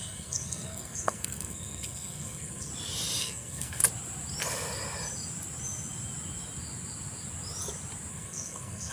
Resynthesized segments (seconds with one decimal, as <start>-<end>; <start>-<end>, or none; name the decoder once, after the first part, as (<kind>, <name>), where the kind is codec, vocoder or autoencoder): 0.0-2.7 (codec, SNAC); 3.2-3.8; 8.1-8.9